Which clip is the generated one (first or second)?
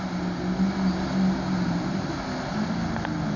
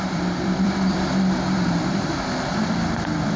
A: second